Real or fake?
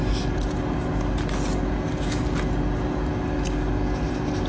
real